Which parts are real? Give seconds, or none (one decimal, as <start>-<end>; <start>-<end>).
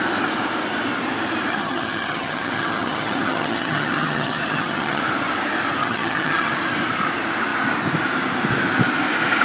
0.0-1.5; 5.0-5.8; 6.5-9.4